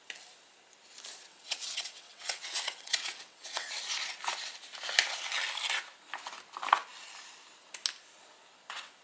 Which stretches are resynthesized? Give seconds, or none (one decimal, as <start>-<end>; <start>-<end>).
1.3-3.7